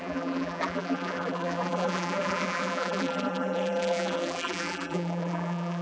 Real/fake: fake